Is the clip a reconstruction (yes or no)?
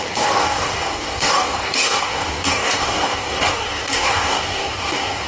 yes